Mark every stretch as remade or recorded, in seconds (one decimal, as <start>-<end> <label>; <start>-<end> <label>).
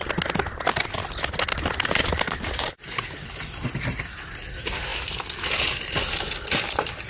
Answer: 0.0-7.1 recorded